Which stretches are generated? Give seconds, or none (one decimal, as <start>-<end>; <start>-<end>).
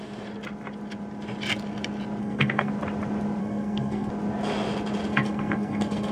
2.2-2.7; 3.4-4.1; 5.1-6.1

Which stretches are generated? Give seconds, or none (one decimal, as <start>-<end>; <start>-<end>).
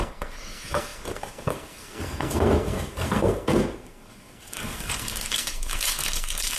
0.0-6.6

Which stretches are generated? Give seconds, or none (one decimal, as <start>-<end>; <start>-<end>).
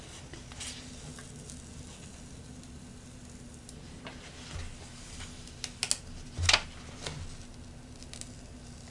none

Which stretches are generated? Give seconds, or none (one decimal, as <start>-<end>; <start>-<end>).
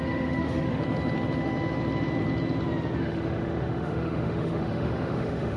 0.0-0.8; 3.0-5.6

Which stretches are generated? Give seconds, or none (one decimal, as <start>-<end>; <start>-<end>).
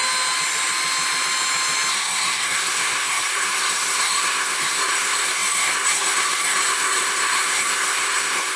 1.9-8.6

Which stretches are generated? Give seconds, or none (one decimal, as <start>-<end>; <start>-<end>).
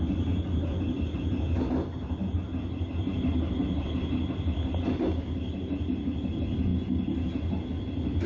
none